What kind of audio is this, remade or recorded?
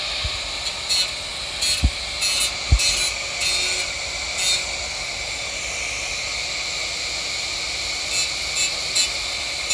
recorded